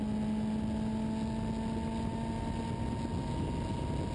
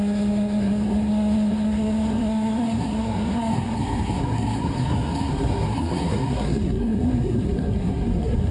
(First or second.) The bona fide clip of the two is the first